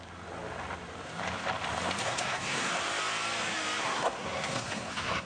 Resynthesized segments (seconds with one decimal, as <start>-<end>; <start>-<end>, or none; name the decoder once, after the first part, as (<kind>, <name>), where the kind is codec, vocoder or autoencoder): 2.0-2.7 (codec, SNAC); 3.8-5.3